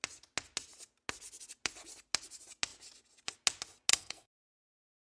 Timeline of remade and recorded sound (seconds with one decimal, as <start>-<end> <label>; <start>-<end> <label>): 0.0-3.9 recorded; 3.9-4.5 remade; 4.5-5.1 recorded